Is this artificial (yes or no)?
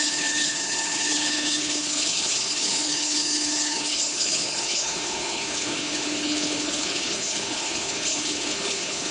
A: yes